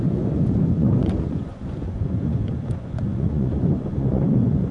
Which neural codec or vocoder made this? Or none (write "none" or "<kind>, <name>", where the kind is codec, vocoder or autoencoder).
vocoder, Vocos